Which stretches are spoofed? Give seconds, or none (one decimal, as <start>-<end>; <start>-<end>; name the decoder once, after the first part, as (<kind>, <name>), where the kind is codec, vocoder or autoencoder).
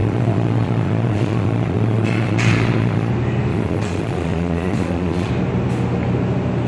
0.0-3.1 (vocoder, Vocos); 3.5-5.3